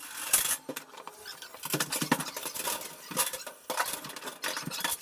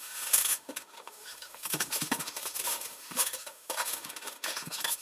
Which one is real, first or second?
first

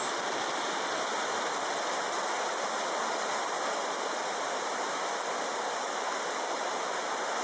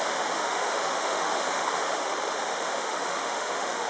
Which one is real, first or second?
first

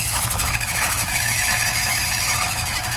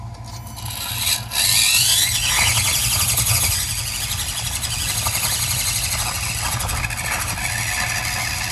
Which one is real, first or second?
second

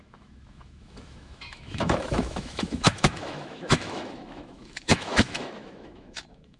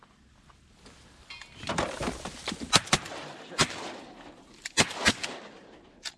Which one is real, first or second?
second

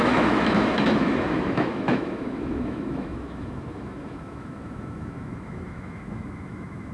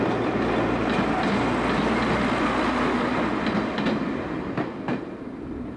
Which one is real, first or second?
second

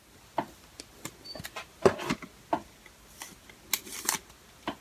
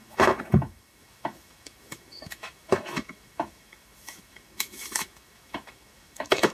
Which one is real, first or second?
first